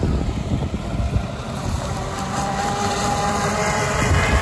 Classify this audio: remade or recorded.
recorded